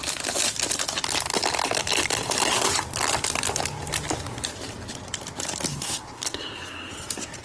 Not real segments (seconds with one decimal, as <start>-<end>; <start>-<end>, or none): 5.7-6.9